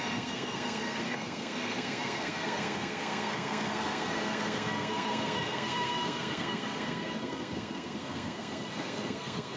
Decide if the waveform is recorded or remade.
remade